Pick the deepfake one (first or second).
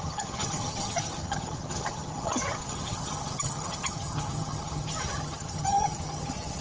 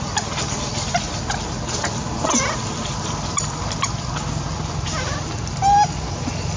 first